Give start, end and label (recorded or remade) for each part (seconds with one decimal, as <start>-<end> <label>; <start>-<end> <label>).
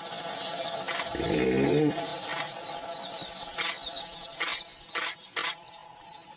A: 0.0-6.4 recorded